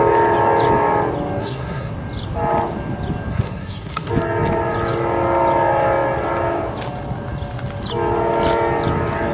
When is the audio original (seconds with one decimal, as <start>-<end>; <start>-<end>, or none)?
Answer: 0.0-1.4; 1.9-3.3; 4.1-9.3

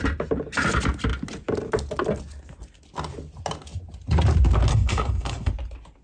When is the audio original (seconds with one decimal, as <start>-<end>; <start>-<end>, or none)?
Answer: 0.0-4.7; 5.5-6.0